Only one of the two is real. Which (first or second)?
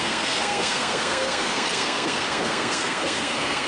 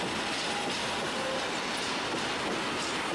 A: second